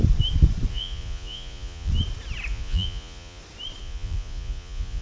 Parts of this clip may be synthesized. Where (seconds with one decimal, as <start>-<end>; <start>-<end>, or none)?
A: 0.7-1.9; 2.5-3.4; 3.8-5.0